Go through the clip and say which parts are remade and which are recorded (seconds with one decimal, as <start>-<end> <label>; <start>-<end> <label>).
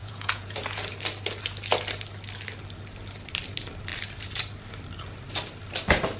0.0-0.6 remade; 0.6-6.2 recorded